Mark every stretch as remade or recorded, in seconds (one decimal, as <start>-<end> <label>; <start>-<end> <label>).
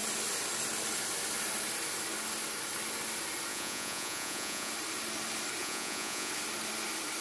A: 0.0-3.5 recorded; 3.5-4.7 remade; 4.7-5.6 recorded; 5.6-6.3 remade; 6.3-7.2 recorded